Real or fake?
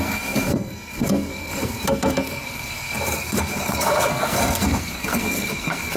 fake